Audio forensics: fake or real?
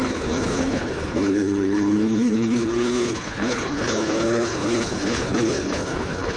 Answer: fake